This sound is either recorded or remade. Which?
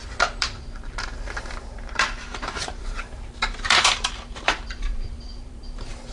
remade